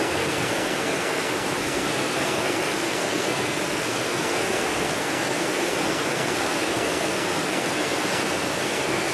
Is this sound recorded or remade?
remade